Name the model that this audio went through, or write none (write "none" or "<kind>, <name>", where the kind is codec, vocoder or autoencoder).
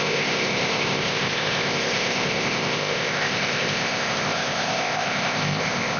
codec, ZipCodec